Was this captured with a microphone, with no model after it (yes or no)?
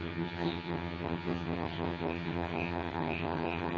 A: no